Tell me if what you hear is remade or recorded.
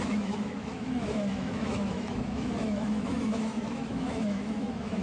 remade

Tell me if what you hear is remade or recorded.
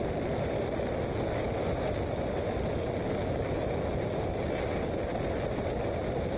recorded